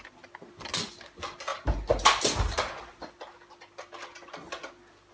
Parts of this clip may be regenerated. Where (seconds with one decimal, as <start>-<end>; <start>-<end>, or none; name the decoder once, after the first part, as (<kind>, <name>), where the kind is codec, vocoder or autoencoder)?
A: none